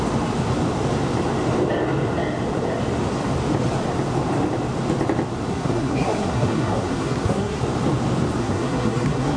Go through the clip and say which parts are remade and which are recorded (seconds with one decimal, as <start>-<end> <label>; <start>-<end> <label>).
0.0-5.5 recorded; 5.5-7.6 remade; 7.6-8.4 recorded; 8.4-9.4 remade